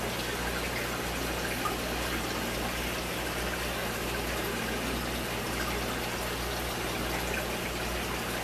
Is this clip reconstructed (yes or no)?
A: no